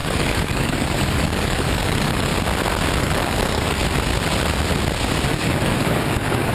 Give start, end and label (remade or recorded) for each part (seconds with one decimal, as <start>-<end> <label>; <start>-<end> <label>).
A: 0.0-2.3 remade; 2.3-3.0 recorded; 3.0-3.8 remade; 3.8-5.4 recorded; 5.4-6.5 remade